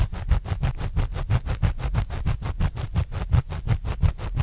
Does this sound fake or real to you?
real